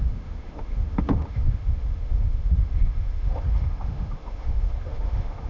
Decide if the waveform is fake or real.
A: fake